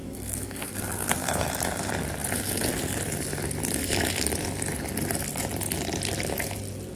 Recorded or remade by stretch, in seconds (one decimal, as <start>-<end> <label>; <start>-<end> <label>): 0.0-1.5 remade; 1.5-7.0 recorded